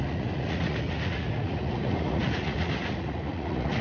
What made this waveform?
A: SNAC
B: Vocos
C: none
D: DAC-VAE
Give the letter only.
B